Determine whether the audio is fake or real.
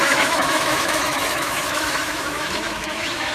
fake